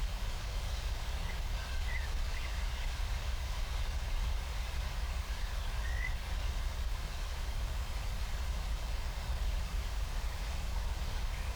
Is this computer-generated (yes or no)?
yes